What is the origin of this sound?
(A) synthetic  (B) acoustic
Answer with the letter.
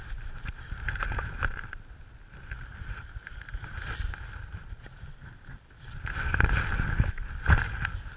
B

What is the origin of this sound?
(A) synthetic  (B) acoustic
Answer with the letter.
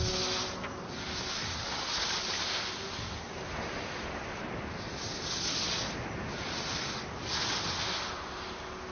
B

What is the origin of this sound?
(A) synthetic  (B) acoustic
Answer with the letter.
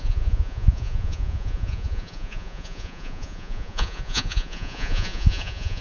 A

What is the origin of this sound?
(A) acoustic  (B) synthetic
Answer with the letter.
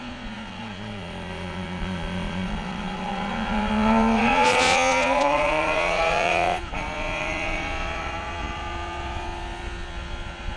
B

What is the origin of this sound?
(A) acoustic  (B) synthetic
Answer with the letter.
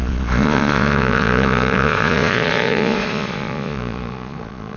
B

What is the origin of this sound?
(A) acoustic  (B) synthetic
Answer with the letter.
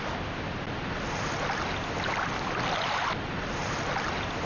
A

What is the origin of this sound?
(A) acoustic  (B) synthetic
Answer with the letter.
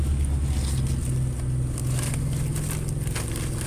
A